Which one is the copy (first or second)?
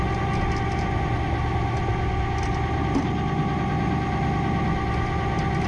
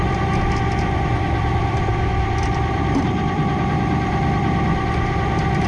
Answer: second